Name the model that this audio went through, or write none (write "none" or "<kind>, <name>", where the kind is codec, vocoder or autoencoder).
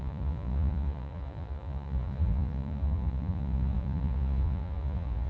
vocoder, Vocos